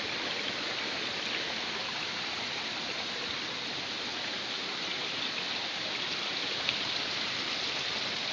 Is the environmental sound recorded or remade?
recorded